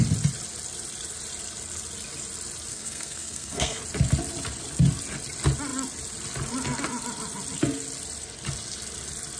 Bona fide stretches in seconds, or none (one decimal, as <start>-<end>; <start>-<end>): 0.0-2.7; 3.8-9.4